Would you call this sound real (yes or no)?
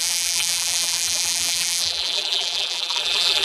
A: no